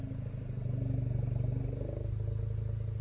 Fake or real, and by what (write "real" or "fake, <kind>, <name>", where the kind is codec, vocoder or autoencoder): real